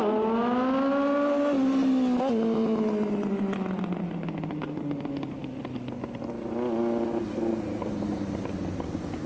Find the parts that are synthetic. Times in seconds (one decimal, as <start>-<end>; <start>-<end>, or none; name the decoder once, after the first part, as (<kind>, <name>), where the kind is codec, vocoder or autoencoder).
none